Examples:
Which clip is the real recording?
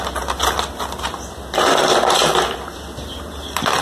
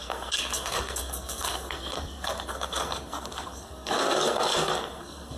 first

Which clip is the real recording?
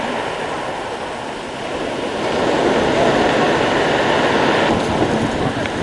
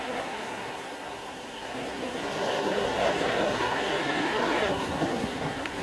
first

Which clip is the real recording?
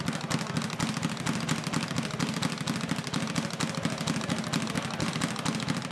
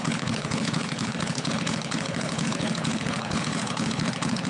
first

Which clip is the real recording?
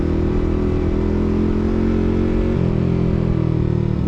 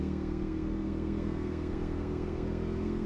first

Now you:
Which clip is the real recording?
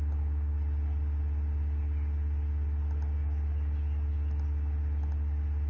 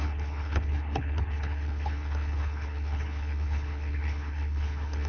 first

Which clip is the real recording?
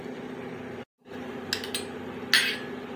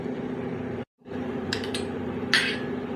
first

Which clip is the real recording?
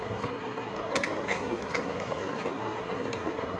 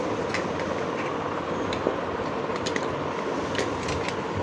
second